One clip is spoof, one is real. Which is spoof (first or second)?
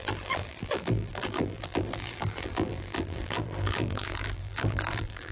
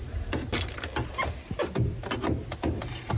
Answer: first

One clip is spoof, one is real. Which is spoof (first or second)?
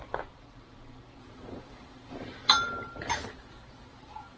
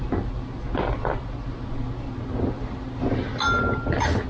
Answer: first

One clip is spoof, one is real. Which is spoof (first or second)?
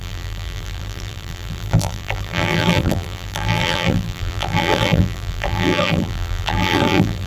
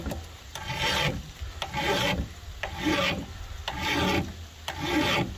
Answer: first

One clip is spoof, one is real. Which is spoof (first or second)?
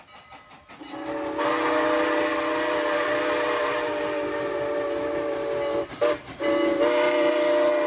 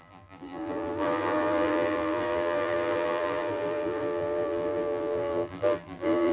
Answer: second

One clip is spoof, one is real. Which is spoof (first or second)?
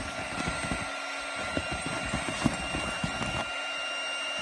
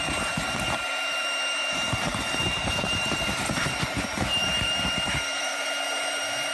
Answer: second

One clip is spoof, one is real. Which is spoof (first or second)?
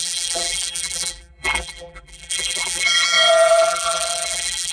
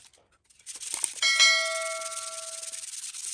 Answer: first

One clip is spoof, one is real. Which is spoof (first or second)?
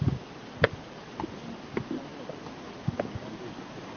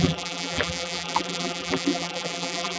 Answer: second